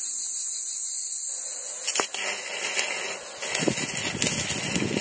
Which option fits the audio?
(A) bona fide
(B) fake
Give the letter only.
A